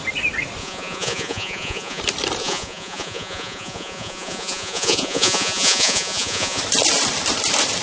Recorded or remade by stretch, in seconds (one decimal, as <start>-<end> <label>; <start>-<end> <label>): 0.0-0.6 recorded; 0.6-2.0 remade; 2.0-2.4 recorded; 2.4-6.6 remade; 6.6-7.8 recorded